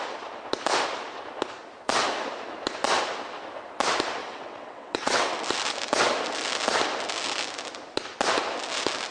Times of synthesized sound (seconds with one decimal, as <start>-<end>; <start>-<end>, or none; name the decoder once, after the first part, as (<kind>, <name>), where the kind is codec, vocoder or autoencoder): 4.2-5.3 (vocoder, WaveNeXt)